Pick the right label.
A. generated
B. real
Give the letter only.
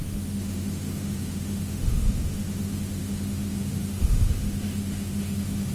A